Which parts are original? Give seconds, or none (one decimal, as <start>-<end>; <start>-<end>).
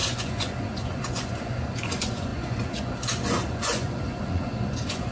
none